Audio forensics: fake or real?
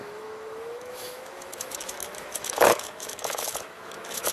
fake